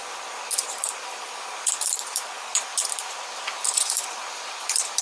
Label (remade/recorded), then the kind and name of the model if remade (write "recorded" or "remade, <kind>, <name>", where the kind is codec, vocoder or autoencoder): remade, vocoder, BigVGAN v2